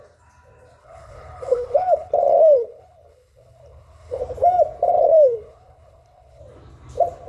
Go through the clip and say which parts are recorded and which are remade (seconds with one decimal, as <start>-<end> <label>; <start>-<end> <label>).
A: 0.0-0.8 recorded; 0.8-4.2 remade; 4.2-4.9 recorded; 4.9-6.4 remade; 6.4-7.3 recorded